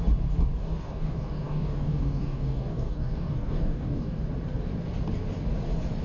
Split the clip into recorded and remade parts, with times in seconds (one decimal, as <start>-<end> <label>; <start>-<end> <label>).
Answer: 0.0-0.6 recorded; 0.6-4.2 remade; 4.2-6.0 recorded